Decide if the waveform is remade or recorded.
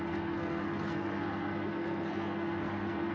remade